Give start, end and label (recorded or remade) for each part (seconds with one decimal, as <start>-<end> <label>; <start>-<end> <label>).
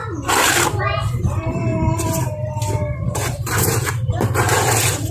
0.0-5.1 remade